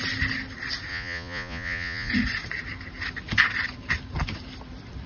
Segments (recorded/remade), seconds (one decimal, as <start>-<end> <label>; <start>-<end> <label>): 0.0-0.9 recorded; 0.9-2.1 remade; 2.1-5.1 recorded